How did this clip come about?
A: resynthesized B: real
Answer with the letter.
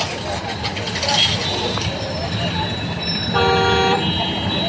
B